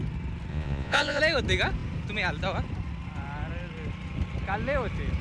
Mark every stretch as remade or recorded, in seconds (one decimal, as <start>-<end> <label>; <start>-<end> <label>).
0.0-0.5 recorded; 0.5-1.2 remade; 1.2-5.2 recorded